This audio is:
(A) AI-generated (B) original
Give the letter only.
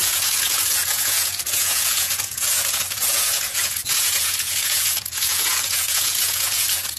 A